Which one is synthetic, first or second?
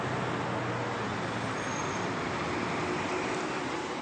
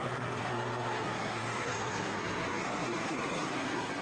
second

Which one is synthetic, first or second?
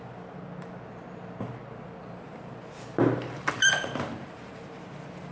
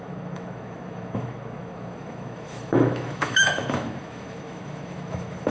second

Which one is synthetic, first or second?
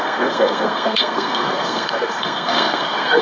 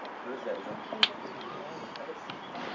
first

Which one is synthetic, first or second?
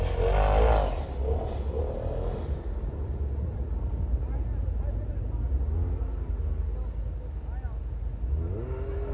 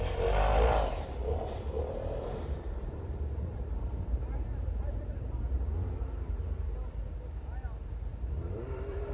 second